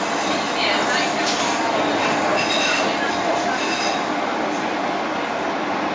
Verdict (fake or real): real